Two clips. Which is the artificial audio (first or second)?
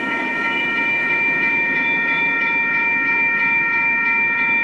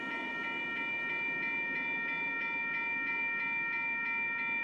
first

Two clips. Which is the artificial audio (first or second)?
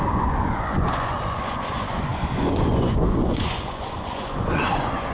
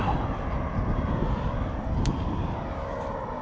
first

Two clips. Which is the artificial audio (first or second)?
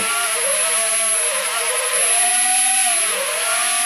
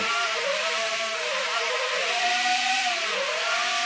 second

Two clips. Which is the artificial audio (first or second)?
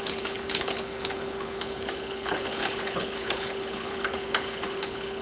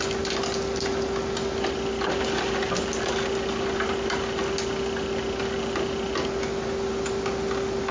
first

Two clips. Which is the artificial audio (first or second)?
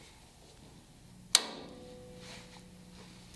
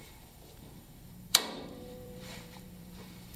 second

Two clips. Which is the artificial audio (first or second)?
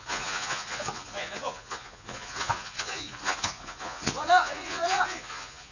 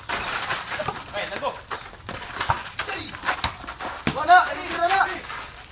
first